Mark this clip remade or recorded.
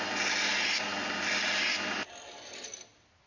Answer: recorded